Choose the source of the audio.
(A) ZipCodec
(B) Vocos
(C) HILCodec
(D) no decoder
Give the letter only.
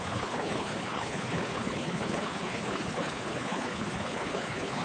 C